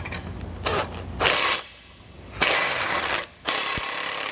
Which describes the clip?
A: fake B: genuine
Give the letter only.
B